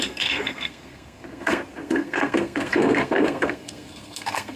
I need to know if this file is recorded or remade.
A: remade